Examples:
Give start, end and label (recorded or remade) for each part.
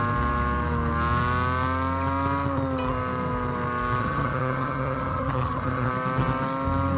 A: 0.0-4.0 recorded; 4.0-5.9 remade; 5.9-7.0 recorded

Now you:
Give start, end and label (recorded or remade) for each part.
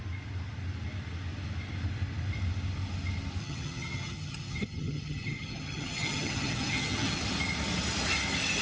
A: 0.0-3.4 recorded; 3.4-7.2 remade; 7.2-8.6 recorded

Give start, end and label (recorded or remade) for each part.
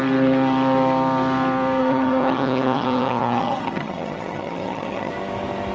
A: 0.0-1.8 recorded; 1.8-5.1 remade; 5.1-5.7 recorded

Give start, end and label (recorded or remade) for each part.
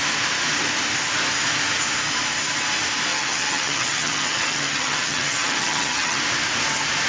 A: 0.0-3.1 recorded; 3.1-6.2 remade; 6.2-7.1 recorded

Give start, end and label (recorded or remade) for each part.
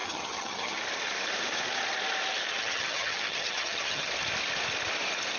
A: 0.0-0.8 remade; 0.8-2.5 recorded; 2.5-4.1 remade; 4.1-5.4 recorded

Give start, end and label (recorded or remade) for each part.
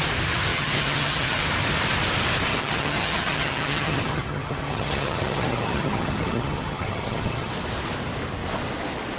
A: 0.0-0.5 recorded; 0.5-1.4 remade; 1.4-2.5 recorded; 2.5-7.5 remade; 7.5-9.2 recorded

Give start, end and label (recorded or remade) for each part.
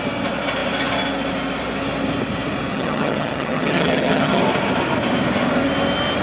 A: 0.0-2.7 recorded; 2.7-4.4 remade; 4.4-6.2 recorded